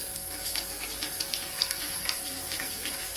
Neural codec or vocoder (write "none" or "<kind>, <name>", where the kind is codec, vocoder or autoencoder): codec, SNAC